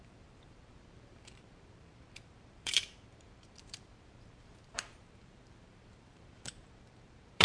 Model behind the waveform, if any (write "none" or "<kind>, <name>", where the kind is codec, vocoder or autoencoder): vocoder, BigVGAN v2